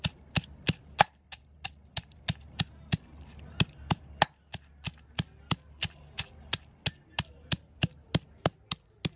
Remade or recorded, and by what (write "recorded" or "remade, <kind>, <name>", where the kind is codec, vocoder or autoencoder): recorded